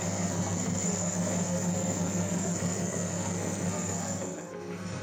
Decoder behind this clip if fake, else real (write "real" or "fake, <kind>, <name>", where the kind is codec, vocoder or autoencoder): fake, codec, SNAC